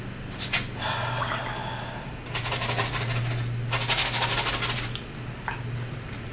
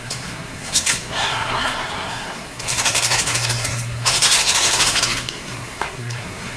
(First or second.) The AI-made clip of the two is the second